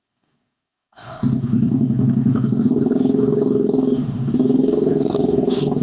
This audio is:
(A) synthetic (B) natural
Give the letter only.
A